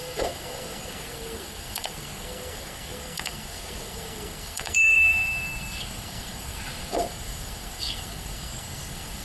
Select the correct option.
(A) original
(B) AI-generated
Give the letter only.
B